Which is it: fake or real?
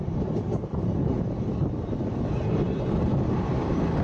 real